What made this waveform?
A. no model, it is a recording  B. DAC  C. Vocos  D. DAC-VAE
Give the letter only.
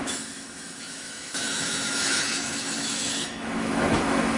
D